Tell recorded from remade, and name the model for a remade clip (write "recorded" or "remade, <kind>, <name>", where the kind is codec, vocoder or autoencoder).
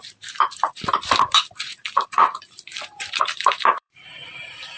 remade, vocoder, BigVGAN v2